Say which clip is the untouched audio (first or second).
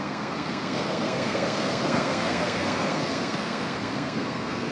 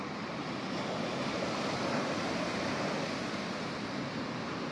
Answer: second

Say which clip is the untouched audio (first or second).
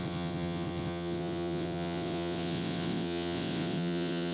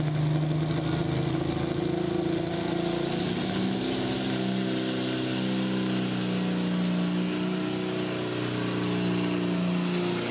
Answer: second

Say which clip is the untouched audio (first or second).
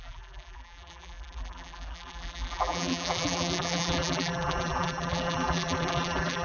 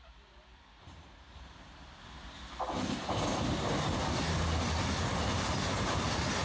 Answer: second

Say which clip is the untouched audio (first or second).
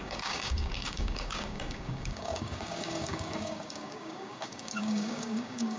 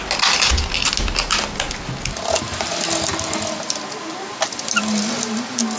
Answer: second